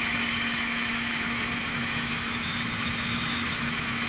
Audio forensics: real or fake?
fake